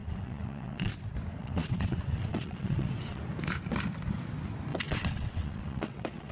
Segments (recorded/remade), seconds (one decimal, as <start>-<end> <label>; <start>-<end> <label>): 0.0-0.9 remade; 0.9-1.4 recorded; 1.4-3.2 remade; 3.2-4.7 recorded; 4.7-6.3 remade